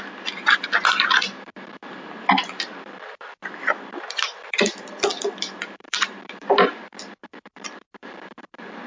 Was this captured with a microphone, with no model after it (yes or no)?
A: no